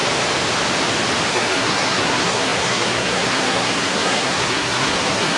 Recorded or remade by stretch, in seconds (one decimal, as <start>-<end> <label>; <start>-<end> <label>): 0.0-1.3 recorded; 1.3-5.4 remade

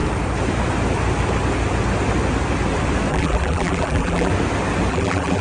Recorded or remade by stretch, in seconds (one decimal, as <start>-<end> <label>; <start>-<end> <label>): 0.0-3.1 recorded; 3.1-4.3 remade; 4.3-4.9 recorded; 4.9-5.4 remade

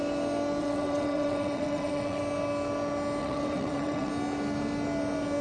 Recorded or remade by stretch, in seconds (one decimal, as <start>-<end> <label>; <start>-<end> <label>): 0.0-0.6 recorded; 0.6-2.2 remade; 2.2-3.2 recorded; 3.2-4.1 remade; 4.1-5.4 recorded

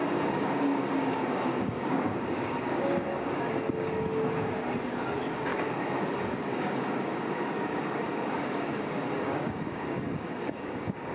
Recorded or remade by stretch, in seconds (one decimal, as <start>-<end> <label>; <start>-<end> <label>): 0.0-11.1 remade

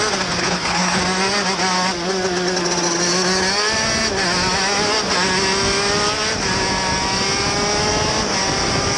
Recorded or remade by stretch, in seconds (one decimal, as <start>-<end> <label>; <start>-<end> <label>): 0.0-0.4 recorded; 0.4-1.0 remade; 1.0-9.0 recorded